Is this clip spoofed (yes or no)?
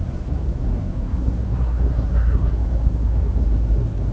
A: yes